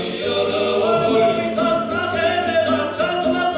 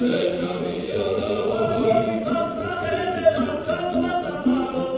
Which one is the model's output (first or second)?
second